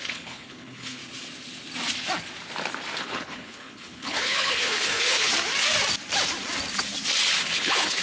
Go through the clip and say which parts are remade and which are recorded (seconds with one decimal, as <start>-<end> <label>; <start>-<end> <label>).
0.0-1.0 remade; 1.0-3.0 recorded; 3.0-5.3 remade; 5.3-7.4 recorded; 7.4-8.0 remade